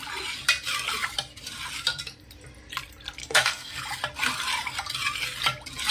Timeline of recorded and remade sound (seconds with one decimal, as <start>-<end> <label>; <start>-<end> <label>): 0.0-3.2 recorded; 3.2-3.8 remade; 3.8-5.9 recorded